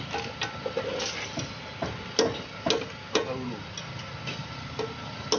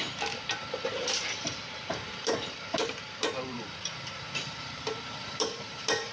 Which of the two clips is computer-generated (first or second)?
second